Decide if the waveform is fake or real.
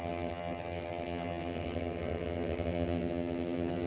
fake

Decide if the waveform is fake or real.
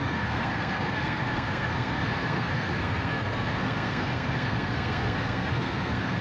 fake